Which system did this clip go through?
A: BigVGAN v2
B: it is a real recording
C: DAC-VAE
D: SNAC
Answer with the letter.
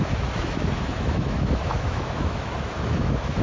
C